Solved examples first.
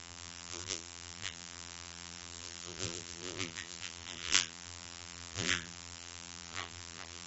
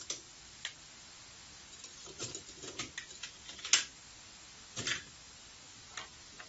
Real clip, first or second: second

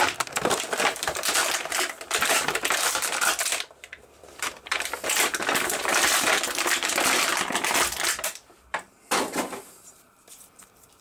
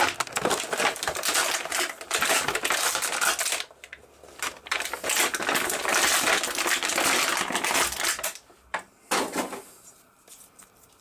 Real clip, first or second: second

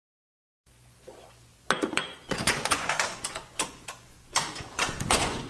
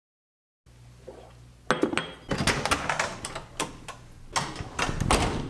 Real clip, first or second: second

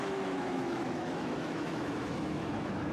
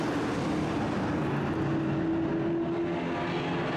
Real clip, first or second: second